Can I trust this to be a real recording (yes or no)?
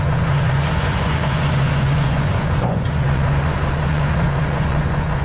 no